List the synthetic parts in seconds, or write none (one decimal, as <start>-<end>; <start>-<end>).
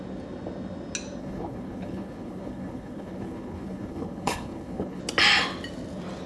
1.2-5.0